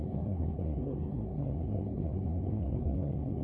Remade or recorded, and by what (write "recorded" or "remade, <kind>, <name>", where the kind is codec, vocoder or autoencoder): remade, codec, SNAC